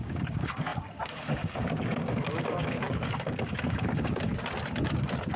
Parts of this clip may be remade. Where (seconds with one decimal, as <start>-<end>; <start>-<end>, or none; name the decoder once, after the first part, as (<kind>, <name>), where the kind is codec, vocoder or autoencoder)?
0.0-4.3 (codec, DAC)